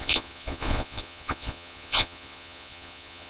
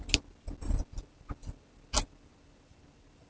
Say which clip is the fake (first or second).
first